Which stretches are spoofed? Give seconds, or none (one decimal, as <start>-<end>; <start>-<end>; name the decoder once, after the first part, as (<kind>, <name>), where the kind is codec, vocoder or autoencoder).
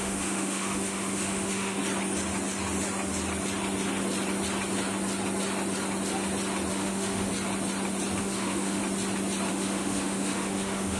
0.0-1.8 (autoencoder, DAC-VAE); 6.7-7.3; 8.2-8.8; 9.5-11.0